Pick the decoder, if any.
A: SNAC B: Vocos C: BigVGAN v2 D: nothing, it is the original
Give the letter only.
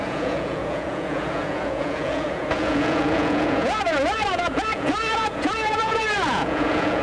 B